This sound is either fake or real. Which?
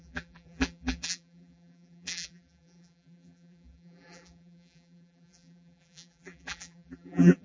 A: fake